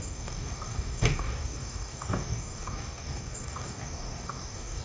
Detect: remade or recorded remade